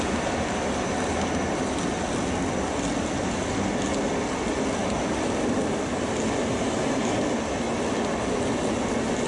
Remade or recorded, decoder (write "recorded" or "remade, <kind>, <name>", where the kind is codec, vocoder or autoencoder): recorded